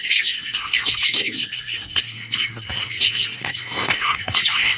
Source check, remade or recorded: remade